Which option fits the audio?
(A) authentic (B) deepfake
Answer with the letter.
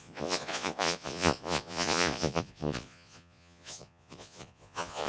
B